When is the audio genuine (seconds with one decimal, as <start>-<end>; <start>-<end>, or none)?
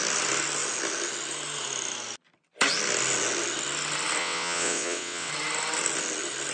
0.0-4.2; 5.3-6.5